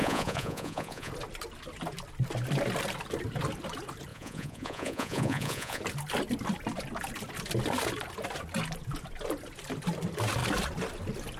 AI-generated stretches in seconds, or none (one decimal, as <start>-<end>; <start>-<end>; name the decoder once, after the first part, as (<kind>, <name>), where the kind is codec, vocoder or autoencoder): 0.0-1.1 (vocoder, Vocos); 4.1-5.8